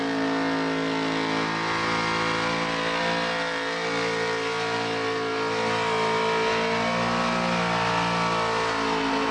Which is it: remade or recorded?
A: recorded